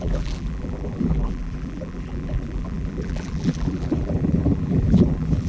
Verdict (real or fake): fake